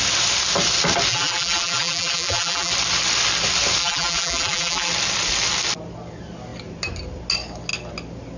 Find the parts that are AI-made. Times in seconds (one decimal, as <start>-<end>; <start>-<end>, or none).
1.1-2.7; 3.8-4.9